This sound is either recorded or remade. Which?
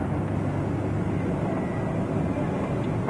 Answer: recorded